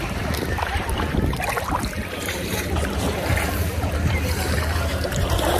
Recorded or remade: remade